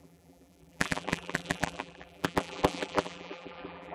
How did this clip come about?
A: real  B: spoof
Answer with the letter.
B